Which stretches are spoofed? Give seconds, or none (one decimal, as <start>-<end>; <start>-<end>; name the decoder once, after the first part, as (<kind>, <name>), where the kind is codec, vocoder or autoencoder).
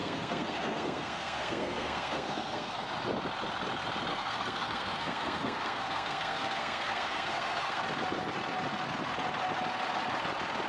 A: 0.0-2.8 (codec, SNAC); 4.1-7.8